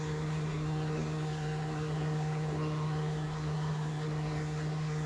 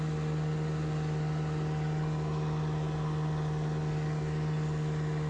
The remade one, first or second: first